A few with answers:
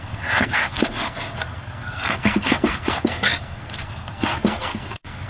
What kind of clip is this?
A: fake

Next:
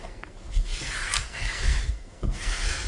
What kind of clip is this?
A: fake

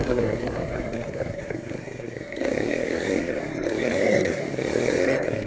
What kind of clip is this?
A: fake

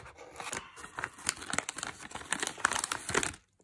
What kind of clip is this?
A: real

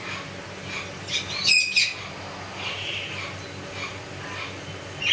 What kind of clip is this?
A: real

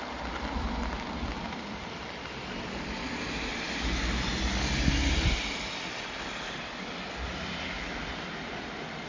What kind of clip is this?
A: real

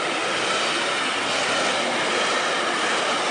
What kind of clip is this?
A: real